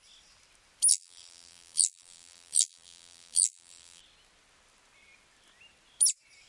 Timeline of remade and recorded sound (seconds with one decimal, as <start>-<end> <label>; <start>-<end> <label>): 0.0-0.9 recorded; 0.9-4.0 remade; 4.0-6.5 recorded